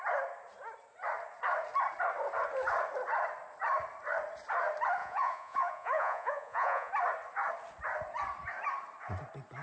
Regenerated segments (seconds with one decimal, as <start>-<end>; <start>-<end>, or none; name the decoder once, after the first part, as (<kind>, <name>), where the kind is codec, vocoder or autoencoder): 5.0-6.9 (vocoder, Vocos)

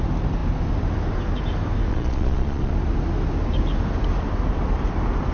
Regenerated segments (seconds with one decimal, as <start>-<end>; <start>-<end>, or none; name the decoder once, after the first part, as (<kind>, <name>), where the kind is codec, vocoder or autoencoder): 1.9-2.7 (vocoder, Vocos)

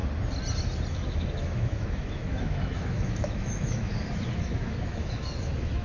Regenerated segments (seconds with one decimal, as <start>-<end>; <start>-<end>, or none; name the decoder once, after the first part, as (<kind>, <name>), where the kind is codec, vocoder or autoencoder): 0.9-5.8 (autoencoder, DAC-VAE)

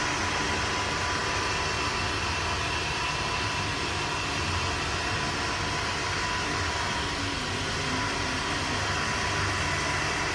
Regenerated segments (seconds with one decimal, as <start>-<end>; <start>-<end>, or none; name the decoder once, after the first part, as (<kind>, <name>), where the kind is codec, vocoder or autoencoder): 1.2-2.0 (vocoder, BigVGAN v2)